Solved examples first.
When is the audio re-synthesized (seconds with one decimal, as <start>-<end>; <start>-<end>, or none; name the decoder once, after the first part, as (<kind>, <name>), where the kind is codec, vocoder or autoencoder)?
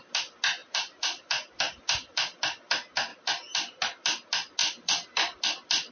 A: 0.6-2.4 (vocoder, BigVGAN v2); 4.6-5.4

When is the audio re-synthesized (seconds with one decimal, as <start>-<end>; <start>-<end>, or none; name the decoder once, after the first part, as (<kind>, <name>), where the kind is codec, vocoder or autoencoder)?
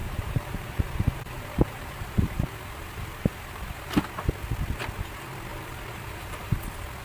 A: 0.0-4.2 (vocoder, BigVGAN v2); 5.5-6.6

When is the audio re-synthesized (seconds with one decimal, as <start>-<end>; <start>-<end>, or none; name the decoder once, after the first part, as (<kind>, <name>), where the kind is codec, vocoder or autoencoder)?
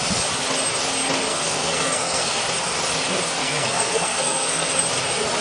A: 1.3-2.4 (codec, SNAC); 3.4-4.8